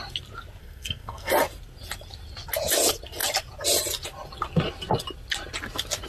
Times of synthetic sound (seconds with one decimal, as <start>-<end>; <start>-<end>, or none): 0.6-1.3

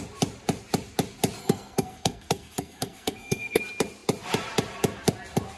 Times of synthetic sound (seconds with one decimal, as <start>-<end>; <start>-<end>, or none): 1.4-3.6

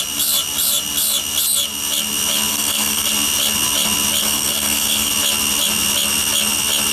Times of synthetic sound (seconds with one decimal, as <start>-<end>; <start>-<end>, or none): 2.5-3.1; 4.2-5.1

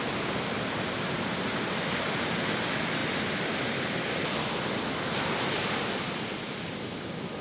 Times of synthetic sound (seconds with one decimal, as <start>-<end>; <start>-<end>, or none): none

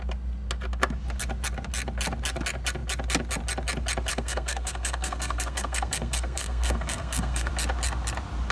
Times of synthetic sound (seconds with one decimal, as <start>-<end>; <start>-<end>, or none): 4.1-7.5

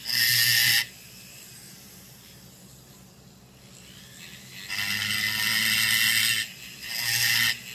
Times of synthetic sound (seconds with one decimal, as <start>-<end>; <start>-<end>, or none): none

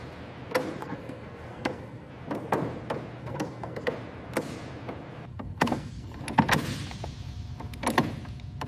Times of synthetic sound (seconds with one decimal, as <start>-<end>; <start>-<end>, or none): 0.8-2.1; 3.2-3.9; 5.3-6.2